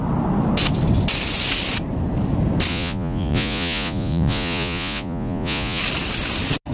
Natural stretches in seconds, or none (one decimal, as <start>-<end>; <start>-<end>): 0.0-2.7; 5.8-6.7